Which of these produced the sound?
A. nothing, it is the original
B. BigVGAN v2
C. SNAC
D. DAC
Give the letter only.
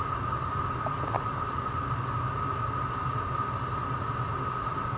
A